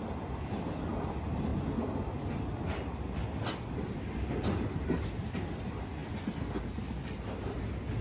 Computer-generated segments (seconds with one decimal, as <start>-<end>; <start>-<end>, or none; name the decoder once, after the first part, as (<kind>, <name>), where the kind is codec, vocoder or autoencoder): none